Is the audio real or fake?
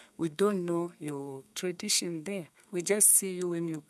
fake